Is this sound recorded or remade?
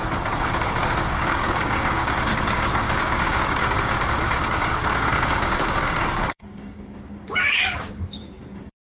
remade